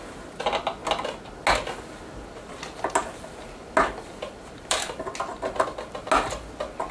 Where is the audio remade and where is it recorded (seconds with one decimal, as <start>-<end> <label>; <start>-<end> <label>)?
0.0-6.9 recorded